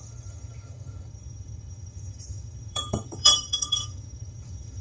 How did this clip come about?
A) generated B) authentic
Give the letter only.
A